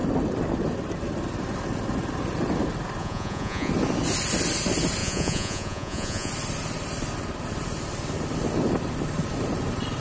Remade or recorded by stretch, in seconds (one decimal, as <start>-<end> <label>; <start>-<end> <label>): 0.0-3.0 recorded; 3.0-3.7 remade; 3.7-5.0 recorded; 5.0-6.3 remade; 6.3-10.0 recorded